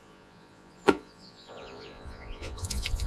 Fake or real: fake